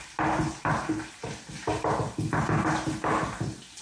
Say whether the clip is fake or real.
real